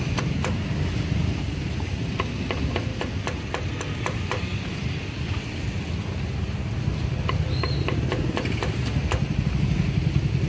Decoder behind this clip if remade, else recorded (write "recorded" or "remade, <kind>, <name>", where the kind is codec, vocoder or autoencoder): recorded